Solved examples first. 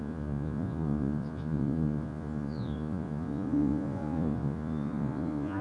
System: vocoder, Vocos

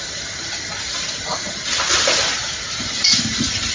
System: none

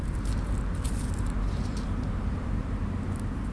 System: none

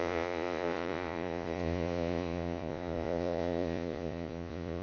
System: vocoder, Vocos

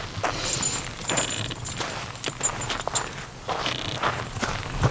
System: none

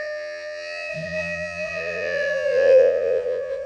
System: vocoder, Vocos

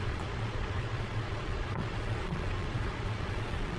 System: vocoder, Vocos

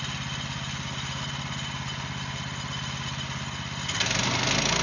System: none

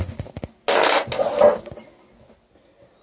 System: none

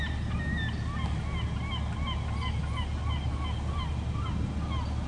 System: none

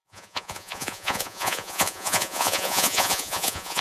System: vocoder, Vocos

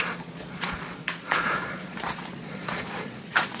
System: vocoder, Vocos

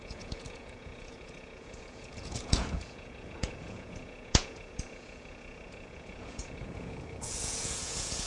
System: vocoder, Vocos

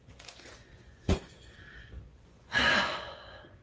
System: vocoder, Vocos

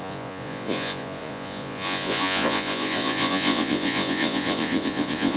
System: vocoder, Vocos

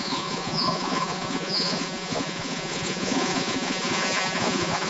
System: vocoder, Vocos